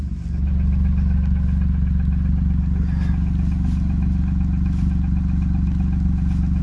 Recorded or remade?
recorded